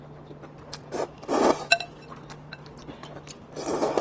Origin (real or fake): real